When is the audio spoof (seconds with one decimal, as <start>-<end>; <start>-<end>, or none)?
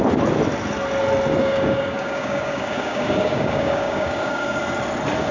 1.4-4.6